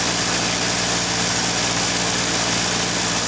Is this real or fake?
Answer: real